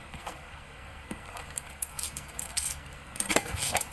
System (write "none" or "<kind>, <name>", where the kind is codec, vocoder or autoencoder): codec, SNAC